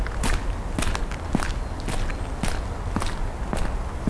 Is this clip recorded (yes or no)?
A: yes